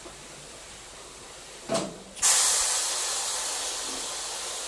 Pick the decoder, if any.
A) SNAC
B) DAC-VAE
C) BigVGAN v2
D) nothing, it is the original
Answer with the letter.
D